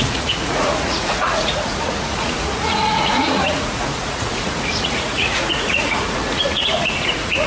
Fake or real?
fake